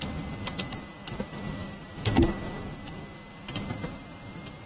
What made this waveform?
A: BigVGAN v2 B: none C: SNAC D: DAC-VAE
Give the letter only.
B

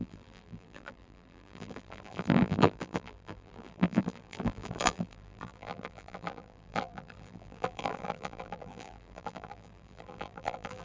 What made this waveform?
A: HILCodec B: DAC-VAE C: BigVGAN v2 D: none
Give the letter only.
C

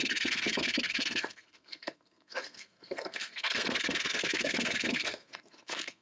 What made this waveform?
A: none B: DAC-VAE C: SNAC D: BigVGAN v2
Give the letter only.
C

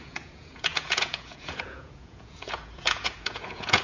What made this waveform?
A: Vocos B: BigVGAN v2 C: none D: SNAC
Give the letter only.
A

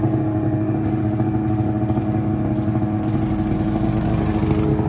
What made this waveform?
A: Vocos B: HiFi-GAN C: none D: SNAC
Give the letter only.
C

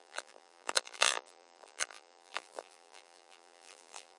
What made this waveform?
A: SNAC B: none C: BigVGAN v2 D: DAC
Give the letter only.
C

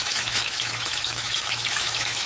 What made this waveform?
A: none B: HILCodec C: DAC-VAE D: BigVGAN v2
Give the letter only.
C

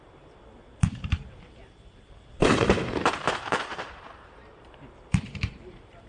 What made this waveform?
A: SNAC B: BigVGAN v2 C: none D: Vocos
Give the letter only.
B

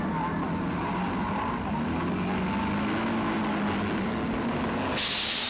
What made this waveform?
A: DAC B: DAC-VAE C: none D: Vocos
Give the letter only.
C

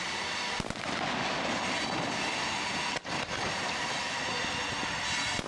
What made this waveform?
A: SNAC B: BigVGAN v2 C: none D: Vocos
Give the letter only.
C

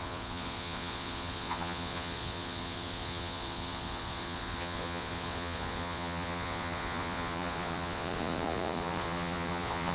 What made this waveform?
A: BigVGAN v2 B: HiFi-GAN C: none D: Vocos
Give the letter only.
D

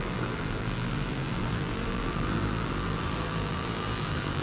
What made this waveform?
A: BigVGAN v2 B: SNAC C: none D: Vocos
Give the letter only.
A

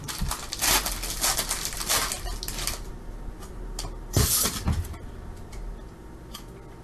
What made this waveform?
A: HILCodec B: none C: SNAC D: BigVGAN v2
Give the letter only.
B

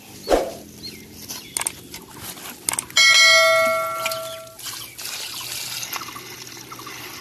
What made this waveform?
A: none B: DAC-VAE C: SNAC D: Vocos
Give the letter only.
A